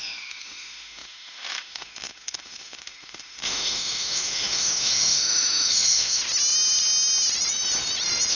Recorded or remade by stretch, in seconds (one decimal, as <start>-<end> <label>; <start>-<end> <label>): 0.0-6.2 remade; 6.2-8.3 recorded